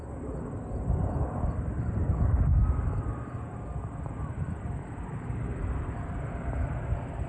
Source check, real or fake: real